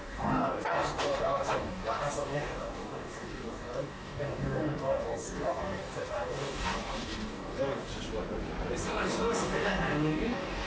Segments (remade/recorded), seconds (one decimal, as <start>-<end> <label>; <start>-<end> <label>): 0.0-7.9 remade; 7.9-8.8 recorded; 8.8-10.7 remade